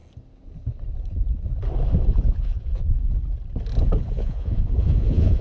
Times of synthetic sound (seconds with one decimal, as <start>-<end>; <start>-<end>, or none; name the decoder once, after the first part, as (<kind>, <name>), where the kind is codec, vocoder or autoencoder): 2.1-3.0 (vocoder, Vocos); 4.1-5.4